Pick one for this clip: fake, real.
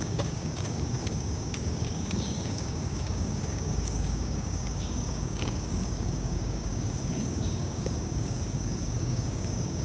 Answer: fake